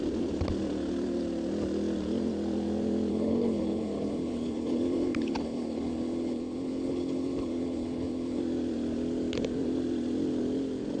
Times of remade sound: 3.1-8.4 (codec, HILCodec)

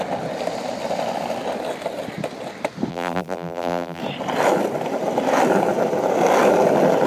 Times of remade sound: 2.9-4.0 (vocoder, BigVGAN v2)